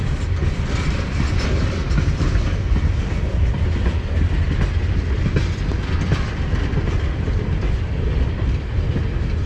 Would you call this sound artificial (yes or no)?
no